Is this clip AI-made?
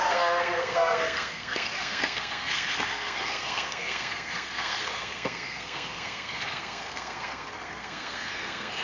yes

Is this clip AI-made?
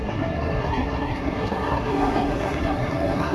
yes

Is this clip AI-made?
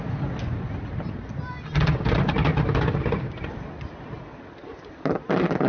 no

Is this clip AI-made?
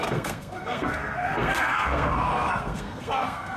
yes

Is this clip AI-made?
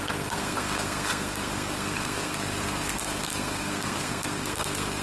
yes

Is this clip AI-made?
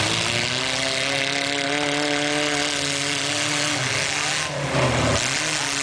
no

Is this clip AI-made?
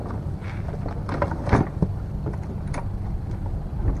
no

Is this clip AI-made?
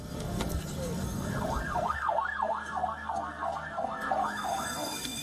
yes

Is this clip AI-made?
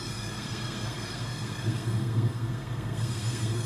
yes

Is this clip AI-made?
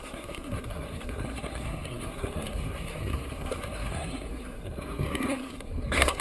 yes